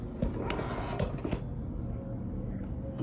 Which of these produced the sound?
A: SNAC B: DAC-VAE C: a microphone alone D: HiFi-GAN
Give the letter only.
C